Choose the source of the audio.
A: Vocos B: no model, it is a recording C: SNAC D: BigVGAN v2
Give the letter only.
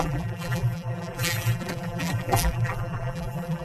D